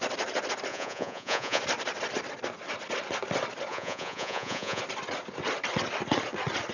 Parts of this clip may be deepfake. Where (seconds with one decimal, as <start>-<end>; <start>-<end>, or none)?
0.7-1.6; 3.7-4.8